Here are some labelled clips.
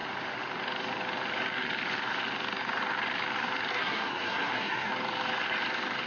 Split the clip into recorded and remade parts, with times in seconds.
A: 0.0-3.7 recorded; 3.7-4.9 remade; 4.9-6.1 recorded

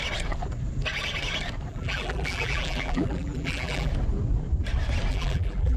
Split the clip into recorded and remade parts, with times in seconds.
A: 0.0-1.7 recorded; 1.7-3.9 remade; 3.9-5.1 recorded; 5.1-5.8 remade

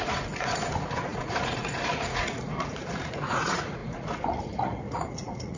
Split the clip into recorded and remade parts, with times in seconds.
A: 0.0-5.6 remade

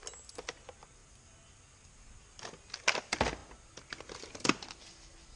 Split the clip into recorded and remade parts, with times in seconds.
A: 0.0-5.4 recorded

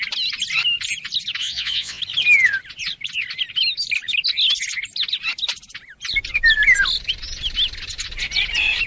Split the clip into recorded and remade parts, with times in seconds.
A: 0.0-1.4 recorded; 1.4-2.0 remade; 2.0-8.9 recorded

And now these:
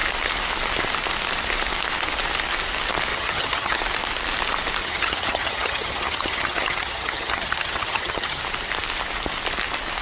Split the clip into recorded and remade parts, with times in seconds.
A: 0.0-3.1 recorded; 3.1-3.8 remade; 3.8-4.8 recorded; 4.8-8.4 remade; 8.4-10.0 recorded